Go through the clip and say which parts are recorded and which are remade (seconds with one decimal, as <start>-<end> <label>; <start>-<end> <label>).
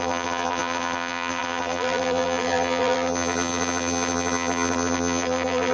0.0-5.7 remade